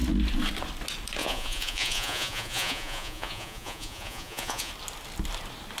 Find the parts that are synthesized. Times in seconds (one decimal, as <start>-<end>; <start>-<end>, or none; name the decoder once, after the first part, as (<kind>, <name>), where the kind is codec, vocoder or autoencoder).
1.2-4.7 (vocoder, Vocos)